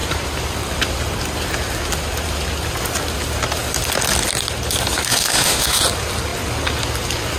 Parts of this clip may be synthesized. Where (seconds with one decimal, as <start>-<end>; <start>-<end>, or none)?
5.1-5.8